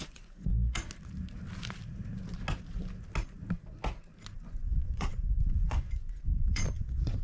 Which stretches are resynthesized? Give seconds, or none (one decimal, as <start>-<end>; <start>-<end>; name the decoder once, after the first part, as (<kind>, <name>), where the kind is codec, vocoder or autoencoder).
0.0-0.5 (vocoder, Vocos); 4.4-7.2